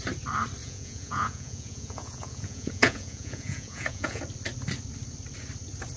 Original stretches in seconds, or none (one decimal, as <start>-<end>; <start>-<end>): 0.0-0.6; 4.2-6.0